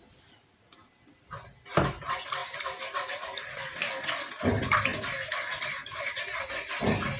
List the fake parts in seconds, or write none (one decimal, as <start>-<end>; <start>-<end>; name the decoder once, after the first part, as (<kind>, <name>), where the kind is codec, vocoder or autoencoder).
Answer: none